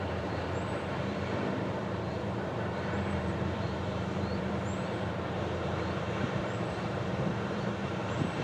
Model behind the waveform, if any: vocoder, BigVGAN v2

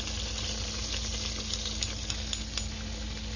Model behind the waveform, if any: none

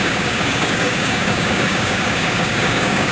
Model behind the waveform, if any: codec, DAC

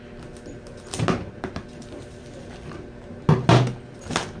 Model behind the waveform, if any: none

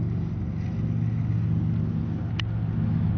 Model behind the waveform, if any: none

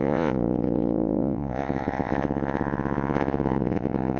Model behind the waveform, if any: vocoder, Vocos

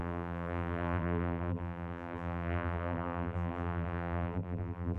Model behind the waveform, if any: vocoder, BigVGAN v2